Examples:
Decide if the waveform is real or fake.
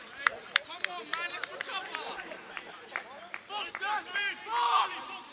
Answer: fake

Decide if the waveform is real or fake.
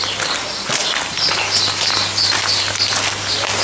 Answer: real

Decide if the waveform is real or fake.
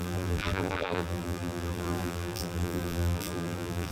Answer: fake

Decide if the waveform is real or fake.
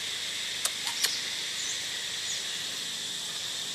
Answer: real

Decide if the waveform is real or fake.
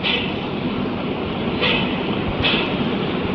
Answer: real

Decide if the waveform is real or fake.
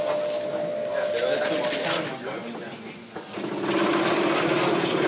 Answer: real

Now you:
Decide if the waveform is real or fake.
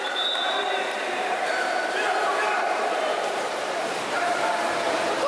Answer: fake